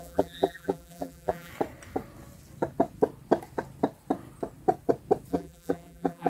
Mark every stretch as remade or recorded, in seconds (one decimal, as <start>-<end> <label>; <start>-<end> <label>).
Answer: 0.0-1.5 remade; 1.5-5.3 recorded; 5.3-6.3 remade